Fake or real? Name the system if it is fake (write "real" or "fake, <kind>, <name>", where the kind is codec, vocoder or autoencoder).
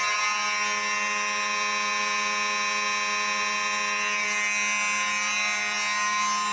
real